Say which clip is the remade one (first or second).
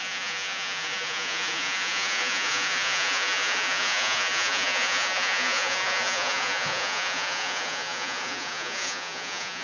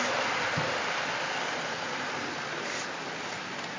first